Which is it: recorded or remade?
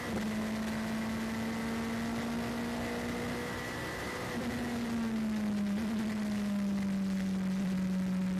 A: recorded